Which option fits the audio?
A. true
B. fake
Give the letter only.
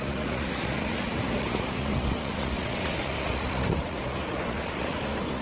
B